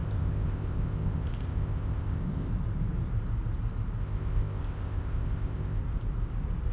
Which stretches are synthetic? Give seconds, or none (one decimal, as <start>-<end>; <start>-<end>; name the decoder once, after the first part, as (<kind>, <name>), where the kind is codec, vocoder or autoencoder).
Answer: 0.0-2.5 (codec, ZipCodec); 4.0-5.8

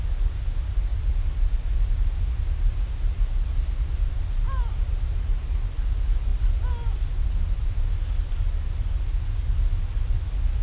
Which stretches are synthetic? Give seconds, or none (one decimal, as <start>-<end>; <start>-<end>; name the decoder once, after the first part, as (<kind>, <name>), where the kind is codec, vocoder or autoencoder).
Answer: none

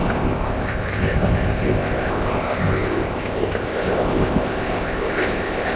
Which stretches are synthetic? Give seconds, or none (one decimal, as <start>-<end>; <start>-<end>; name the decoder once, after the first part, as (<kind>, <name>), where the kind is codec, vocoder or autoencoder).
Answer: 0.0-5.8 (codec, ZipCodec)

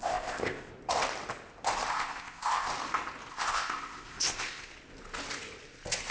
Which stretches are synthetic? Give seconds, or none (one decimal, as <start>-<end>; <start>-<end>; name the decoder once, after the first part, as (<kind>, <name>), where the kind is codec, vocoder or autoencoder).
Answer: 0.0-0.7 (codec, ZipCodec); 1.9-2.7; 3.3-4.7

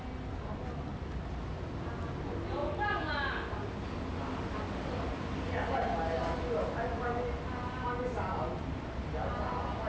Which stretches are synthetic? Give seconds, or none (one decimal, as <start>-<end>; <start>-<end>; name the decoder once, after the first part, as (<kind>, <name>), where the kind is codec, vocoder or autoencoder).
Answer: none

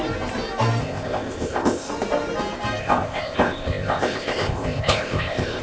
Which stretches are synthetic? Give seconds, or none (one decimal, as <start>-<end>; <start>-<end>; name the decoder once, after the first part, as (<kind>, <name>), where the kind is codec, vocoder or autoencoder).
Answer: 0.8-1.9 (codec, ZipCodec); 2.8-5.6